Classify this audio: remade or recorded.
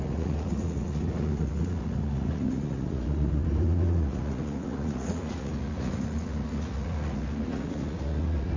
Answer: remade